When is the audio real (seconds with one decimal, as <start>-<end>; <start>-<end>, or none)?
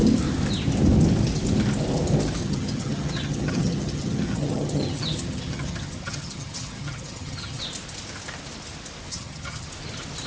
0.0-2.4; 7.6-9.1; 9.7-10.3